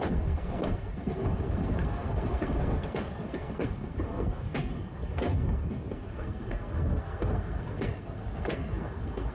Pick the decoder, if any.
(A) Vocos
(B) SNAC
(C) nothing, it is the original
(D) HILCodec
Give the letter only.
B